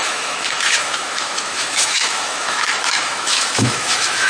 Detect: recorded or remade remade